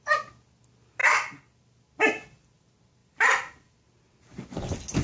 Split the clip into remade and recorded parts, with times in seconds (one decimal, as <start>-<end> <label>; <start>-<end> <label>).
0.0-1.0 recorded; 1.0-1.6 remade; 1.6-3.0 recorded; 3.0-3.7 remade; 3.7-5.0 recorded